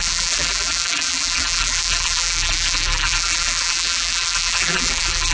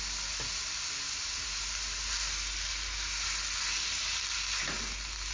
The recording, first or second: second